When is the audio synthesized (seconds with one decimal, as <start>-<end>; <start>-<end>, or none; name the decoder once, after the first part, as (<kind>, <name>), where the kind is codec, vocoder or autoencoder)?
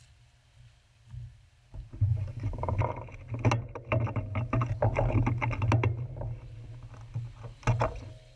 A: 2.1-2.8 (vocoder, BigVGAN v2)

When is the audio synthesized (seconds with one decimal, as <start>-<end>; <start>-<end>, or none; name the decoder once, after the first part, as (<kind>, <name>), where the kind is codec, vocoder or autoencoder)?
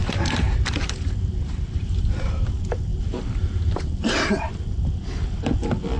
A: 0.0-2.5 (vocoder, BigVGAN v2); 2.9-4.5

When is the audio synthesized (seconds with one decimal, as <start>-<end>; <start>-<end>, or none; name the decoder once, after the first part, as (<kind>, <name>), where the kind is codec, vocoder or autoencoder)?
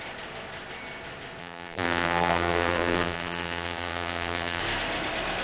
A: 1.4-4.6 (vocoder, BigVGAN v2)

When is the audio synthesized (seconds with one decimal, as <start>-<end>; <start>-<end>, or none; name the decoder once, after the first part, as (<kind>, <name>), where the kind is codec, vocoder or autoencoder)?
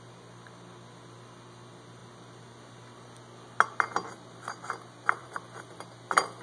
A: 5.2-5.8 (vocoder, BigVGAN v2)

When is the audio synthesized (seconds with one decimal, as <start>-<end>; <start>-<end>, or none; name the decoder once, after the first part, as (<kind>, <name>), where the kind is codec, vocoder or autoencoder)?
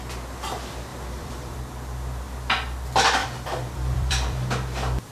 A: 0.9-1.6 (vocoder, BigVGAN v2); 3.2-4.5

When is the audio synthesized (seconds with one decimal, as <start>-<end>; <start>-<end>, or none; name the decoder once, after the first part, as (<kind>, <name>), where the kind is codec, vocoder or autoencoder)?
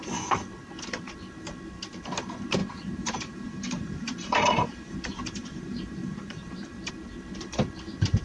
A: 2.6-6.9 (vocoder, BigVGAN v2)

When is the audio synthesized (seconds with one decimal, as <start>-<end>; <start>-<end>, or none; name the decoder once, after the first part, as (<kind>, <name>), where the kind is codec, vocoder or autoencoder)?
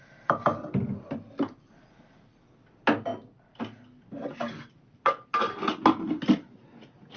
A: 4.2-5.3 (vocoder, BigVGAN v2)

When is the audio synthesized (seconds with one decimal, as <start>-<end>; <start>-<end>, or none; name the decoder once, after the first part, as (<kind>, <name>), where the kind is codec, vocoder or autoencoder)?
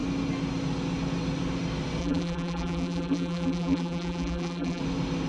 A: 2.0-4.8 (vocoder, BigVGAN v2)